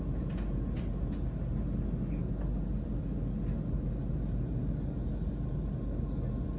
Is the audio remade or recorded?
recorded